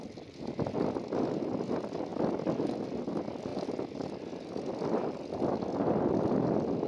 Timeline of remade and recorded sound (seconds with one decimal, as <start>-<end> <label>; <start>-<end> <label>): 0.0-6.9 recorded